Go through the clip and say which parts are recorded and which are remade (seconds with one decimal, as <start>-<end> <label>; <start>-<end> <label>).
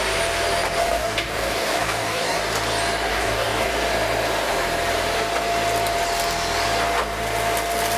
0.0-0.8 recorded; 0.8-2.4 remade; 2.4-3.1 recorded; 3.1-3.7 remade; 3.7-8.0 recorded